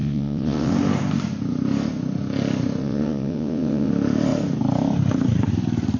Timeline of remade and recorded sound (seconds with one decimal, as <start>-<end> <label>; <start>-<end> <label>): 0.0-0.7 remade; 0.7-2.8 recorded; 2.8-3.9 remade; 3.9-6.0 recorded